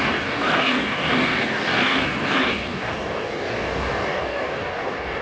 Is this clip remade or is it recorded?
remade